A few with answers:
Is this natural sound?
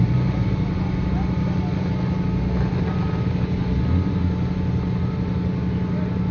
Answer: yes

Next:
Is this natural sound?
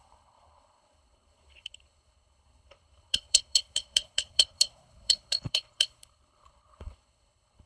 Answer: no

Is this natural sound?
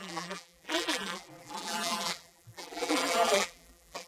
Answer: no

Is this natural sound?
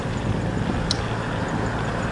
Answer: yes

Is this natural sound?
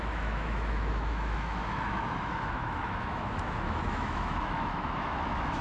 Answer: no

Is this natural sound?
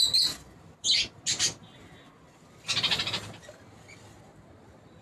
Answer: yes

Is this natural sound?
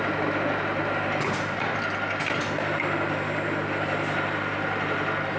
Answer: yes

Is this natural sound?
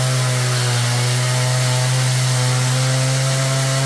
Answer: yes